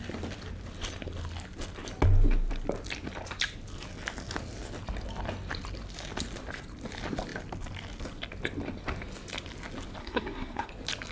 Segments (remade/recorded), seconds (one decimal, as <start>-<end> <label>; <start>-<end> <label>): 0.0-10.0 recorded; 10.0-10.7 remade; 10.7-11.1 recorded

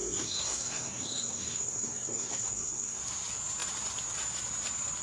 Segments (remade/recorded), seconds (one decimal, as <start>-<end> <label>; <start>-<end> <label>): 0.0-3.0 remade; 3.0-5.0 recorded

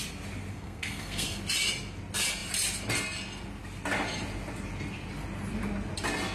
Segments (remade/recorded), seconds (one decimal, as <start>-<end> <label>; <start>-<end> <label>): 0.0-0.5 recorded; 0.5-1.4 remade; 1.4-6.3 recorded

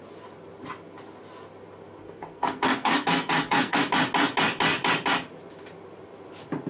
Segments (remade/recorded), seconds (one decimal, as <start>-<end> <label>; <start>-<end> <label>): 0.0-2.0 recorded; 2.0-3.8 remade; 3.8-6.7 recorded

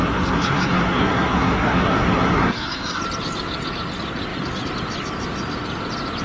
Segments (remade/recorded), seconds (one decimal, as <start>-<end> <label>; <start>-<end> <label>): 0.0-3.0 remade; 3.0-6.2 recorded

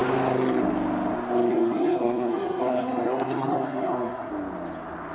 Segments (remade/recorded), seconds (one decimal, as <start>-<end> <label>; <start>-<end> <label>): 0.0-1.5 recorded; 1.5-4.3 remade; 4.3-5.1 recorded

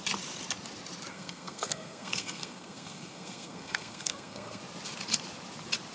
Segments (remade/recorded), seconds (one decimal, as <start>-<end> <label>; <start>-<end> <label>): 0.0-1.1 recorded; 1.1-4.6 remade; 4.6-5.9 recorded

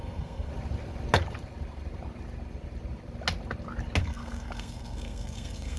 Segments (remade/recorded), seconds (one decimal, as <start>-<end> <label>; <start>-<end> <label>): 0.0-0.5 remade; 0.5-4.0 recorded; 4.0-5.8 remade